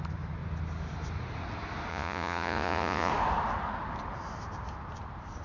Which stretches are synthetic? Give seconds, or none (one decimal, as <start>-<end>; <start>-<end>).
1.9-3.1